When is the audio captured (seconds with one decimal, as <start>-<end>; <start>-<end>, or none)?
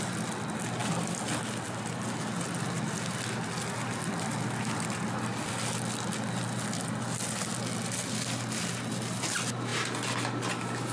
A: 0.0-10.9